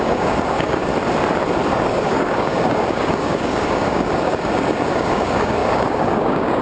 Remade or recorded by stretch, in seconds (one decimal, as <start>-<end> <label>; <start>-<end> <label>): 0.0-0.9 remade; 0.9-1.7 recorded; 1.7-6.6 remade